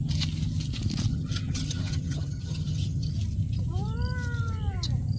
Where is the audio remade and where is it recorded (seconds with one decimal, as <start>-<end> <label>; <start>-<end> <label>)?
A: 0.0-1.1 recorded; 1.1-3.1 remade; 3.1-5.2 recorded